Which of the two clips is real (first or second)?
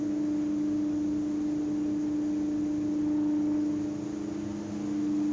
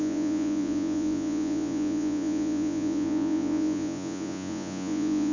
first